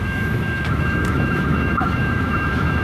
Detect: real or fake fake